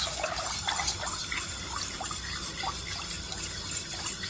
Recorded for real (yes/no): yes